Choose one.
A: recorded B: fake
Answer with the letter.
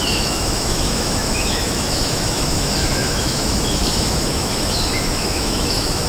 B